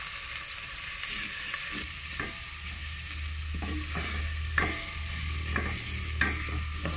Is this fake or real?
real